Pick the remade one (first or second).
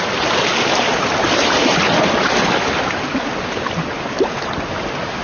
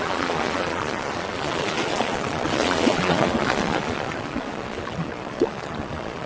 second